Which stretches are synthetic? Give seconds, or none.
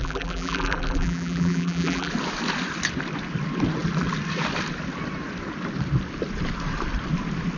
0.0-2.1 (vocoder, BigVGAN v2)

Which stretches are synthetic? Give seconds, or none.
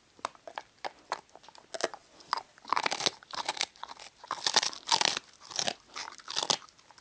none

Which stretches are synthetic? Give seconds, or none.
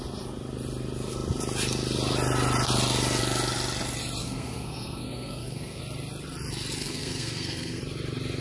4.2-5.8 (codec, SNAC); 6.8-7.8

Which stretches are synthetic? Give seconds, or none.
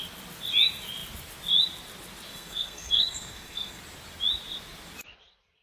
2.3-3.8 (codec, SNAC)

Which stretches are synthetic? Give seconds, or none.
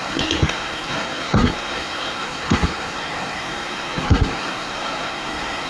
0.0-5.7 (codec, SNAC)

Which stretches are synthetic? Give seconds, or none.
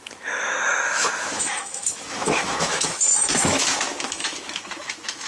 0.0-5.3 (autoencoder, DAC-VAE)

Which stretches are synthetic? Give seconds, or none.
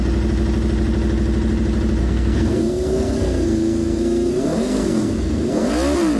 2.0-5.7 (codec, SNAC)